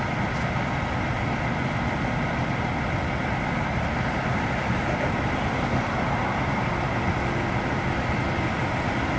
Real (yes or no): yes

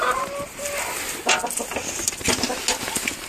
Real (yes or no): yes